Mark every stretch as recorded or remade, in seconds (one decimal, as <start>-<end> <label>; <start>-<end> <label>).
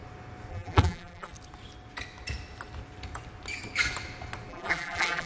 0.0-0.5 recorded; 0.5-1.3 remade; 1.3-4.5 recorded; 4.5-5.3 remade